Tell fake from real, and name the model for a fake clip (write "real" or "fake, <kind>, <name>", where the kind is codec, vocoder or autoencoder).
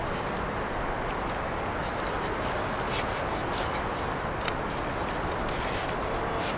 real